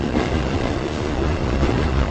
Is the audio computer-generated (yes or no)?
yes